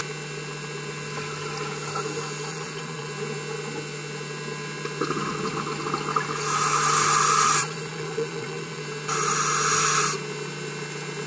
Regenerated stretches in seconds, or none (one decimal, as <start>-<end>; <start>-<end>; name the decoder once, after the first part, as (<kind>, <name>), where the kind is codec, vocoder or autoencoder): 2.5-3.1 (vocoder, Vocos); 7.6-8.8